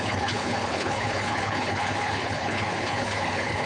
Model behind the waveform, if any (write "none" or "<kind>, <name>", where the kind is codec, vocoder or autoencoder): codec, HILCodec